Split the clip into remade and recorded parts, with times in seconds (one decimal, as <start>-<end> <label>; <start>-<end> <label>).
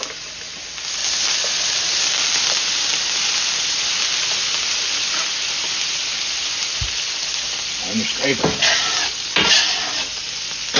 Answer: 0.0-10.8 recorded